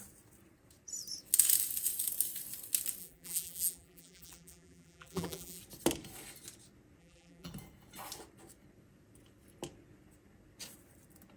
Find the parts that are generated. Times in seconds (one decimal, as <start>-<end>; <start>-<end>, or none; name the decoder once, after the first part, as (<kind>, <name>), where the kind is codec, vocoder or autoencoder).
3.0-5.6 (vocoder, BigVGAN v2); 7.0-7.5